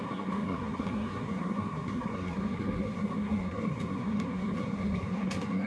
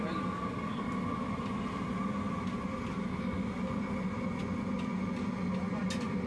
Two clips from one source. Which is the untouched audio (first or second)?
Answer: second